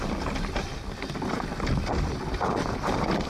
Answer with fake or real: real